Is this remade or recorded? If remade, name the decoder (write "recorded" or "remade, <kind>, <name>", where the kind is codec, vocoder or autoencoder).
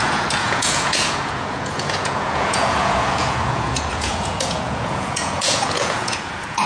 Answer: remade, vocoder, Vocos